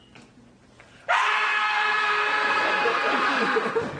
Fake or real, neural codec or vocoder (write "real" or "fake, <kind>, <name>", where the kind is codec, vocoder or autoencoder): real